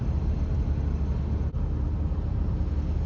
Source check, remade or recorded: recorded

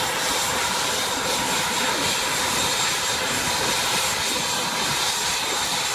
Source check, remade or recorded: recorded